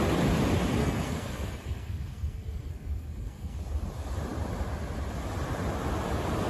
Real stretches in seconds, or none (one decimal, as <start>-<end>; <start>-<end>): 0.0-0.8; 3.6-6.5